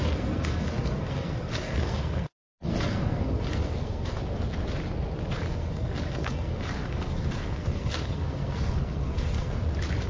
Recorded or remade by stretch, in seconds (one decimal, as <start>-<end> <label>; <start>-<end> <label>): 0.0-4.2 remade; 4.2-5.5 recorded; 5.5-9.6 remade; 9.6-10.1 recorded